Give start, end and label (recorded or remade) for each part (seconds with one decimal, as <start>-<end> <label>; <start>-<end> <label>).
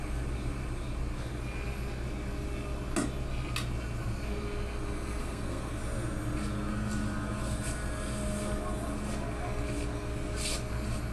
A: 0.0-5.2 recorded; 5.2-5.8 remade; 5.8-11.1 recorded